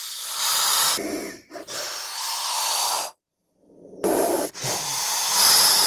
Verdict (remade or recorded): recorded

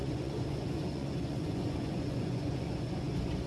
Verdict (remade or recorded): remade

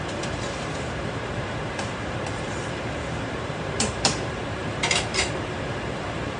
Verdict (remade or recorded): remade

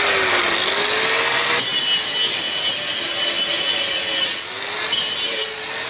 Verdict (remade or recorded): recorded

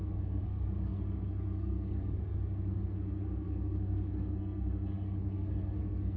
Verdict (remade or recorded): remade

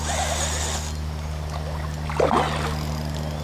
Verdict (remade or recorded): recorded